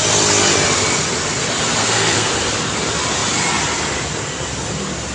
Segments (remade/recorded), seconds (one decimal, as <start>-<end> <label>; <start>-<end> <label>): 0.0-1.8 recorded; 1.8-2.3 remade; 2.3-5.1 recorded